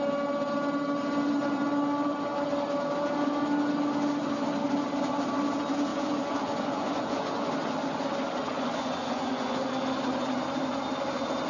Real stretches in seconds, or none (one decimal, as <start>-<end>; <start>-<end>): 0.0-5.9; 7.5-8.5; 9.7-11.5